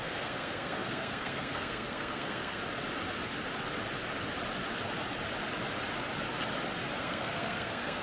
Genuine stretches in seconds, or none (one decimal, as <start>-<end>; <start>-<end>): 2.6-7.0